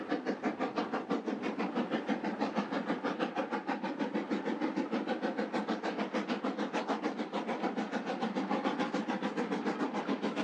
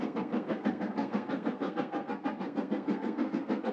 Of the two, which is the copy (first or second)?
second